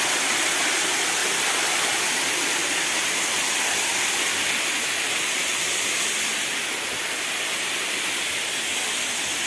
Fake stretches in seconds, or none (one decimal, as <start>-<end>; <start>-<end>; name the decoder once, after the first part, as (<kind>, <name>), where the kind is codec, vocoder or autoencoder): 1.2-1.9 (vocoder, BigVGAN v2)